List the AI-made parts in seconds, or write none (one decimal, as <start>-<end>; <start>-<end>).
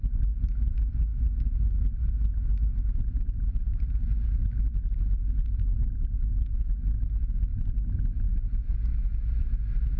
none